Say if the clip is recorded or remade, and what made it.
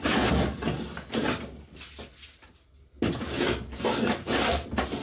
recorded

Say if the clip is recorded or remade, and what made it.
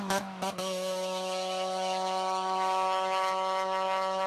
remade, autoencoder, DAC-VAE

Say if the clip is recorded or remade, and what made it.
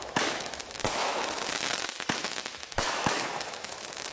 remade, autoencoder, DAC-VAE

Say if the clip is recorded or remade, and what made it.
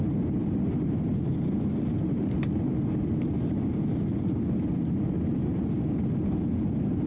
recorded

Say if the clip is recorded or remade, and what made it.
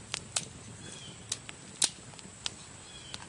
recorded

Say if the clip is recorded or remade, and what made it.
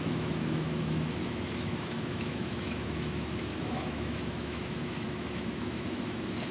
remade, autoencoder, DAC-VAE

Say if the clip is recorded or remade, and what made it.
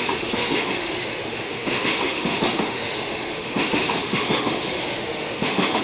remade, autoencoder, DAC-VAE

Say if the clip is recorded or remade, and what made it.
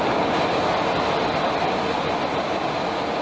recorded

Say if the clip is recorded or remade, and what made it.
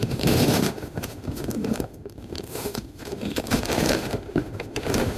remade, autoencoder, DAC-VAE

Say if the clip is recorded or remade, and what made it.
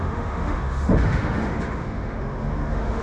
remade, autoencoder, DAC-VAE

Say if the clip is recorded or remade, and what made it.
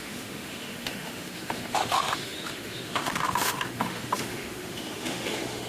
remade, autoencoder, DAC-VAE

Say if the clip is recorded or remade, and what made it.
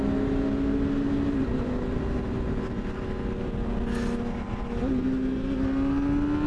recorded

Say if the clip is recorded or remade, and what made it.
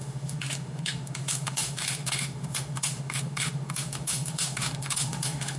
remade, autoencoder, DAC-VAE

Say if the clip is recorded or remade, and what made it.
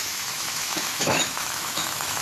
remade, autoencoder, DAC-VAE